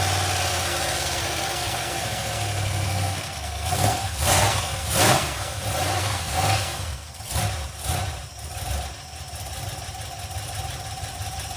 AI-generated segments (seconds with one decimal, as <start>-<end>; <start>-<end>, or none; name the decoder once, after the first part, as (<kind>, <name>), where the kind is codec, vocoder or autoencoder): 0.5-5.6 (codec, SNAC); 6.0-7.4